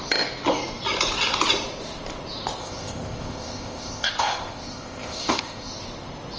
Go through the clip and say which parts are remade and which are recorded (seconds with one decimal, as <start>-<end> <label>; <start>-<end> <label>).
0.0-2.6 recorded; 2.6-5.7 remade; 5.7-6.4 recorded